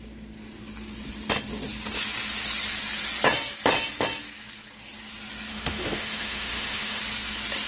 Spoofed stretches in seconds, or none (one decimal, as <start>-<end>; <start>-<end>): 5.5-7.0